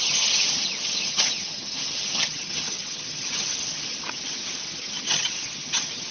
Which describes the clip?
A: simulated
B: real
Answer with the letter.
A